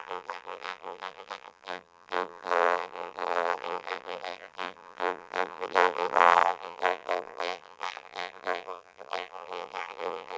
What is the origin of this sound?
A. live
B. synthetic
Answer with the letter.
B